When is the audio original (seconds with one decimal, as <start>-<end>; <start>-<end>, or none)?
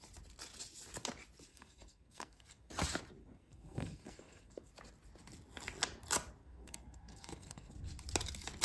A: 0.0-1.5; 2.7-3.2; 4.7-6.4; 7.7-8.6